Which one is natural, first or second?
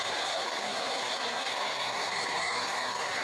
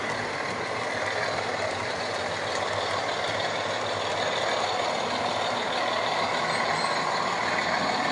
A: second